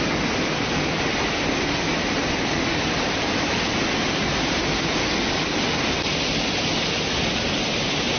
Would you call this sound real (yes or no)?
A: yes